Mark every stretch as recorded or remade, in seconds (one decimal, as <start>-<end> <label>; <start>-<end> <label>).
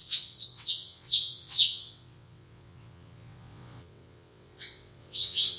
0.0-5.6 remade